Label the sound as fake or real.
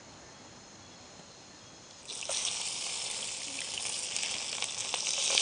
real